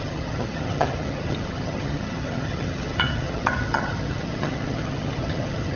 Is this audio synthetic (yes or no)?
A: yes